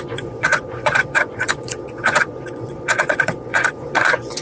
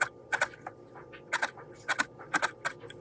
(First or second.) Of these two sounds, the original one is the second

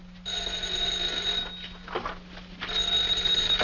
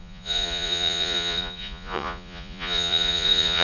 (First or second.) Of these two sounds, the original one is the first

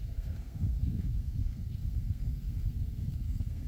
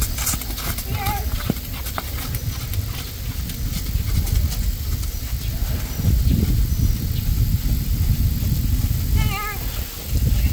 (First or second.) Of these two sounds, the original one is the second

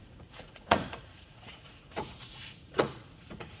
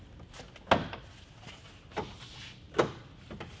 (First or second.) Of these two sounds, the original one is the second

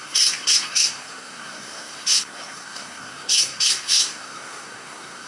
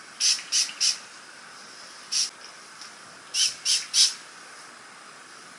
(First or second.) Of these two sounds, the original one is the second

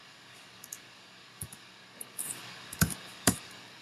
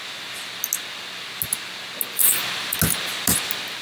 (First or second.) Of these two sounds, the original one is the second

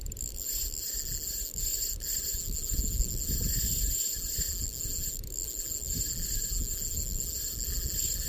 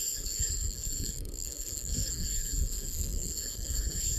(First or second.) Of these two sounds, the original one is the first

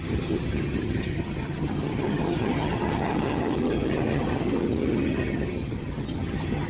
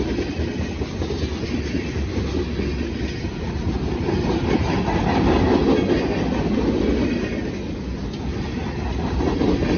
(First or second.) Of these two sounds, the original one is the second